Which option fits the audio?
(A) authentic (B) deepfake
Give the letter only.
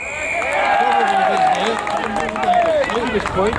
A